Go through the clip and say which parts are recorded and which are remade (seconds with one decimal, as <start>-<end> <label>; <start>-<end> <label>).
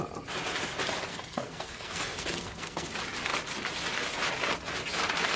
0.0-1.1 recorded; 1.1-2.9 remade; 2.9-5.4 recorded